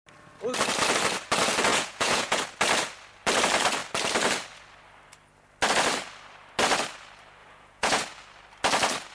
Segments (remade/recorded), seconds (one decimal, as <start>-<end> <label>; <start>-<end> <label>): 0.0-1.7 recorded; 1.7-2.4 remade; 2.4-7.4 recorded; 7.4-8.0 remade; 8.0-9.1 recorded